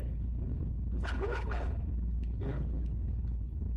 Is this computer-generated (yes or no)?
yes